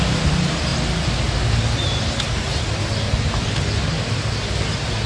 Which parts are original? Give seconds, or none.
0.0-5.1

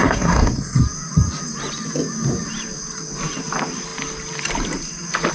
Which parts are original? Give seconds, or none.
0.8-5.3